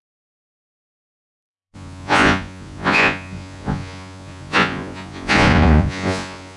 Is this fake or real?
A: fake